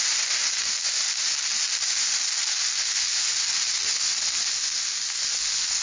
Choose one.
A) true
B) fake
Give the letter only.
A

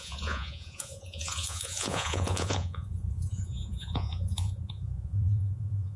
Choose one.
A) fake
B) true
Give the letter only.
A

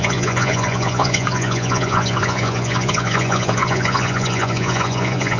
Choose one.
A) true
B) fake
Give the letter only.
B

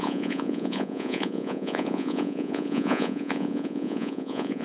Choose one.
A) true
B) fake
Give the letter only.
B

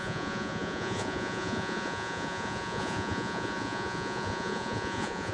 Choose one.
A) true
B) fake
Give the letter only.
B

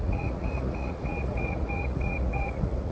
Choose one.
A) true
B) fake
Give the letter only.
B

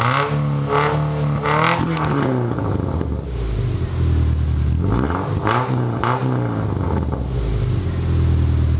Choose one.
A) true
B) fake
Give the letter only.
A